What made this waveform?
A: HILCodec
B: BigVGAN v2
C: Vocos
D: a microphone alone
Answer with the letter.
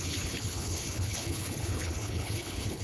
A